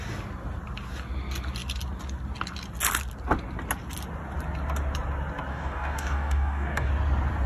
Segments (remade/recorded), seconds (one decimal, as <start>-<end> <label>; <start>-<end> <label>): 0.0-5.5 recorded; 5.5-6.9 remade; 6.9-7.5 recorded